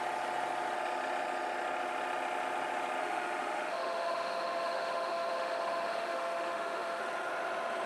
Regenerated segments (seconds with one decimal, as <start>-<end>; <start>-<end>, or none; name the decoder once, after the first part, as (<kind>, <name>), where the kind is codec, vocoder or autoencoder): 3.0-7.0 (autoencoder, DAC-VAE)